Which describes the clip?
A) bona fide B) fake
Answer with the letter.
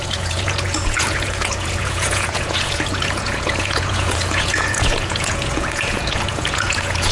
B